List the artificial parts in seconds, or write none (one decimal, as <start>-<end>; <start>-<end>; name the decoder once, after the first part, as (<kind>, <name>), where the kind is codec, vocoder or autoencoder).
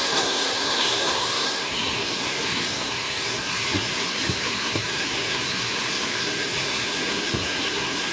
0.0-8.1 (codec, SNAC)